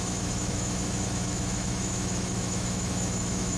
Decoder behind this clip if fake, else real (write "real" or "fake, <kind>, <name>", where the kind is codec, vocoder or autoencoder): fake, autoencoder, DAC-VAE